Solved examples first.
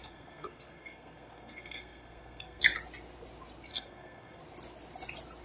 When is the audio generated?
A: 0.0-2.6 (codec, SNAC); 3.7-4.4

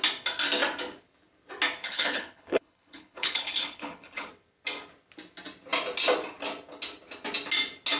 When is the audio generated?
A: 1.8-4.3 (codec, HILCodec)

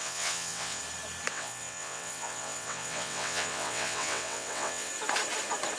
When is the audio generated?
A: 0.0-0.8 (vocoder, WaveNeXt); 1.3-4.9

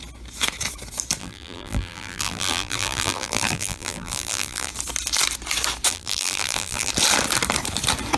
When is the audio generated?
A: 1.2-4.7 (vocoder, BigVGAN v2); 5.9-6.9

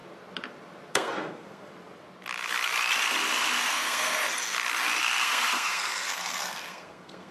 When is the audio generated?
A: 0.9-1.7 (codec, SNAC); 3.7-4.2; 5.0-7.3

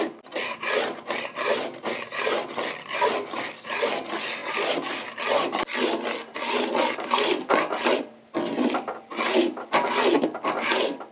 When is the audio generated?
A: none